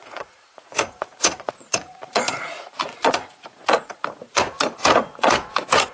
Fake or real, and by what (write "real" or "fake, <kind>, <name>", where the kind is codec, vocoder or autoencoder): fake, vocoder, Vocos